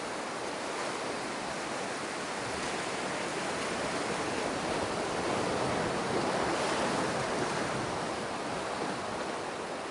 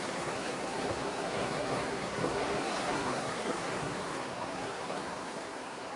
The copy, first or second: second